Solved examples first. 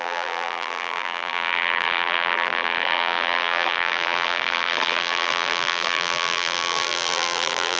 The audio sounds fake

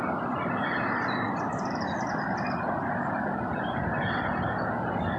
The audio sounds real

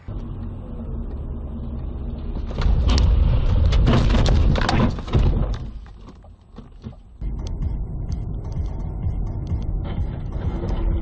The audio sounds real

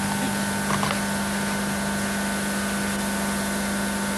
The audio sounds real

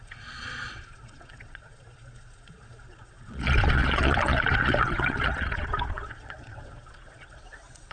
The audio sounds fake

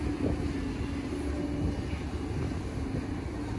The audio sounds real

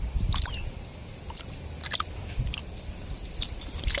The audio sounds real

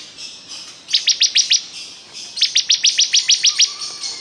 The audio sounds real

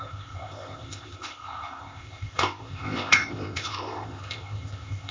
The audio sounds fake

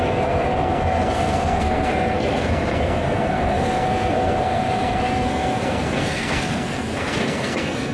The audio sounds fake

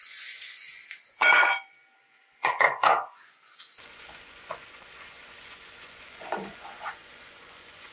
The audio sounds fake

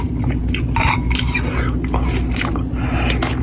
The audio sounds real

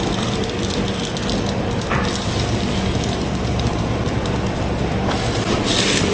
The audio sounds fake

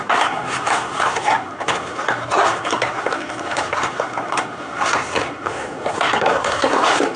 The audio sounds fake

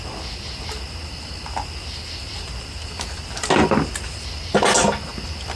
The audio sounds real